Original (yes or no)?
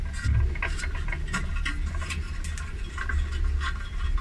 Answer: yes